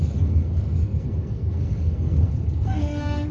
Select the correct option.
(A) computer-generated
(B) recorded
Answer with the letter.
A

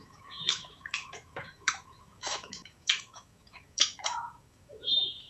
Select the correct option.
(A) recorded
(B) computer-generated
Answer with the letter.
B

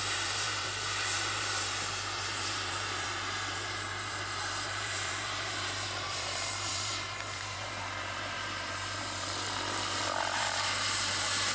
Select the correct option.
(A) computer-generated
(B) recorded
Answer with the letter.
A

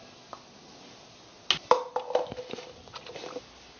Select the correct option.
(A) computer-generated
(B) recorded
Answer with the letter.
B